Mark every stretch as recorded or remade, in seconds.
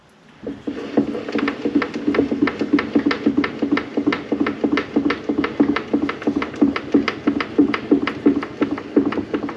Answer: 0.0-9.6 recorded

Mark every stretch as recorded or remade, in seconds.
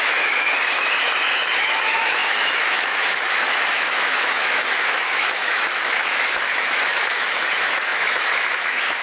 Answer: 0.0-9.0 remade